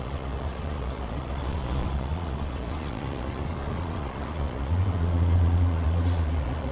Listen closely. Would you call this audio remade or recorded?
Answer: remade